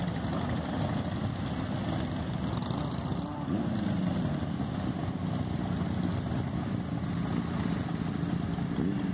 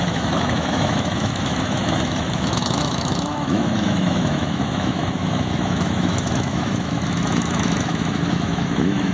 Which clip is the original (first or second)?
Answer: first